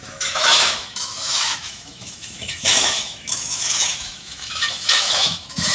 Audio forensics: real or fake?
fake